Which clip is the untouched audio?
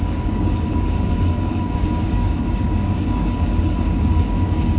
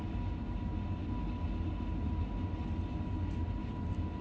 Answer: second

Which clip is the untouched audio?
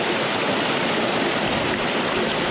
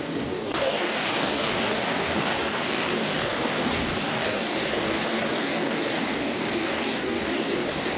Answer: first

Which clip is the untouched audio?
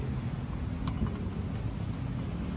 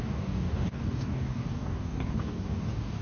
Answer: first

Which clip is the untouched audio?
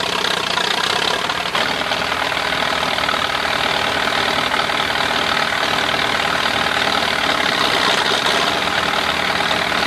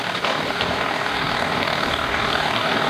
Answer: first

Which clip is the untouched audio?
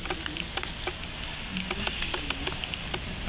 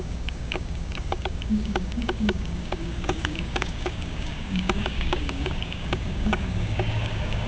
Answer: first